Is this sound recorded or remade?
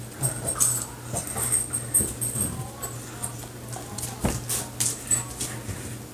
recorded